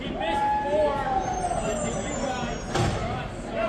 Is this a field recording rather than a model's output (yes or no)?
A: yes